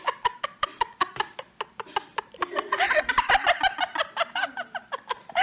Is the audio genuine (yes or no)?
yes